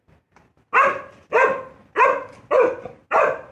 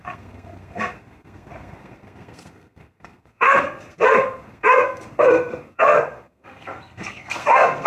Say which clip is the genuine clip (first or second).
first